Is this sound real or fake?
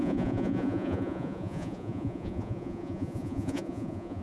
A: fake